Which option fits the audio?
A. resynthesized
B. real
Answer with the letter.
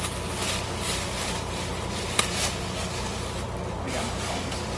B